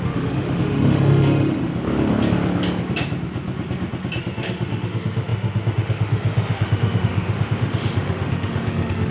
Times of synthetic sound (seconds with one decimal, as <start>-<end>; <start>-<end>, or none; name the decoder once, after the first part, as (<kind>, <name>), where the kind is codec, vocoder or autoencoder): 0.0-1.7 (autoencoder, DAC-VAE); 4.2-9.1